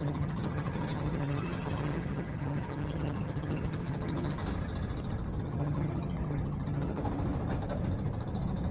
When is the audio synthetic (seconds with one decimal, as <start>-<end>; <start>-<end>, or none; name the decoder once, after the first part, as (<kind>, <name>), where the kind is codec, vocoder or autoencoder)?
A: 0.0-4.4 (vocoder, HiFi-GAN); 5.4-7.0